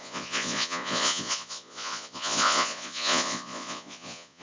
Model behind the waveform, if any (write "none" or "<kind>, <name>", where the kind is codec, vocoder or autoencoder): vocoder, Vocos